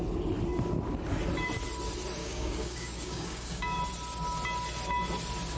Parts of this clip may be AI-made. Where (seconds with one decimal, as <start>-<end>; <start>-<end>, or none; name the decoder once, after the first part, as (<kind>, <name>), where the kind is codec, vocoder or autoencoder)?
2.2-3.8 (codec, DAC)